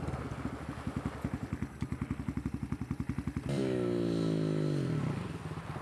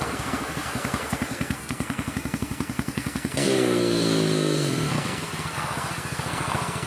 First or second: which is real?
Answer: first